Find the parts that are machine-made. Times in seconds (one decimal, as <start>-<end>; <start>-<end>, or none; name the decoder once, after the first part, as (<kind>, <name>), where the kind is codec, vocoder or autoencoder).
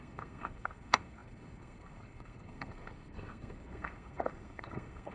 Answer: 0.0-5.1 (codec, SNAC)